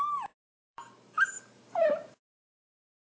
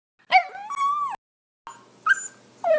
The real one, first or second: second